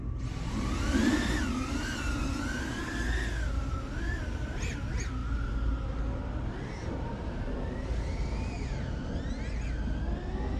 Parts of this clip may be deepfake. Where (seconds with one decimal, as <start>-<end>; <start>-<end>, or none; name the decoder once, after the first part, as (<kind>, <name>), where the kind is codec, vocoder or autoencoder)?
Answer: none